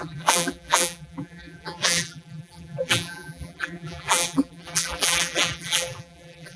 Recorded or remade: remade